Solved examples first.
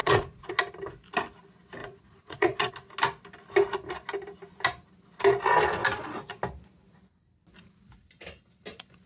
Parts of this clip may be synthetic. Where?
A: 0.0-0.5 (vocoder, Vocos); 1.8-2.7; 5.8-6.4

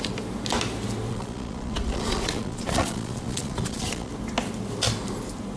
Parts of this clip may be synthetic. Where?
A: 1.1-4.1 (vocoder, Vocos)